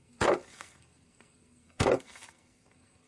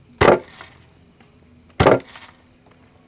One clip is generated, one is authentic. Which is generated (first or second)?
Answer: first